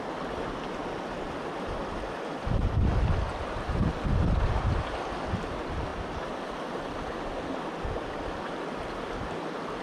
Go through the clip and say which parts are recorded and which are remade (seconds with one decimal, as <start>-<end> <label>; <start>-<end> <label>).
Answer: 0.0-9.8 recorded